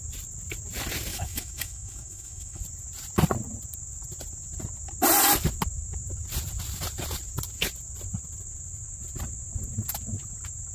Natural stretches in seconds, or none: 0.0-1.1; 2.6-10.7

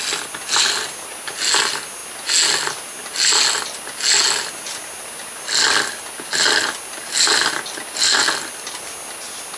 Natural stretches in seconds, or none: 0.0-9.6